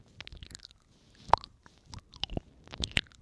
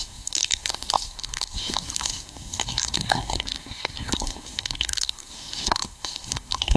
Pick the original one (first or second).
first